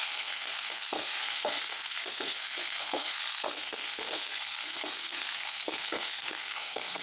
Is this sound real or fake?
fake